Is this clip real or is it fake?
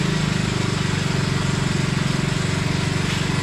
real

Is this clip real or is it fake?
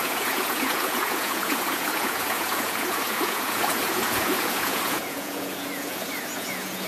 fake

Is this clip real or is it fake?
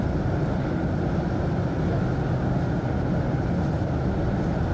real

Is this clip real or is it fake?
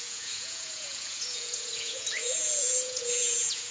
fake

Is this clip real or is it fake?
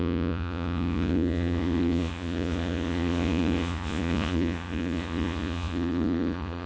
fake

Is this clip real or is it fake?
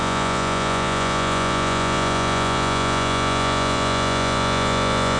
fake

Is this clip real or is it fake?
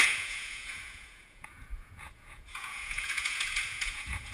fake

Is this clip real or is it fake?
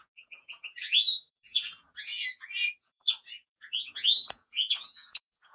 fake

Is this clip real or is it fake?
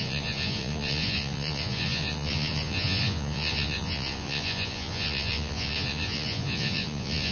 fake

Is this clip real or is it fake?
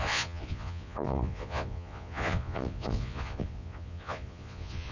fake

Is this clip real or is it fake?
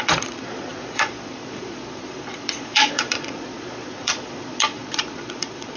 fake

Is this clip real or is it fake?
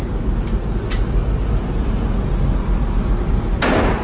real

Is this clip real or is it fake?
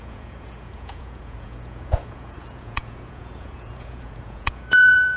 fake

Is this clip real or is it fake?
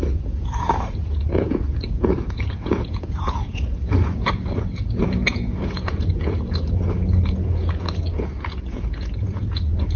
fake